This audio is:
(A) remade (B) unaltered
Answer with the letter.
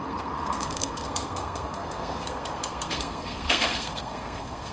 A